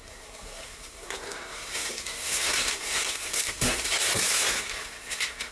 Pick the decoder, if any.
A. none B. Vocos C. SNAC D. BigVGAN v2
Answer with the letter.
C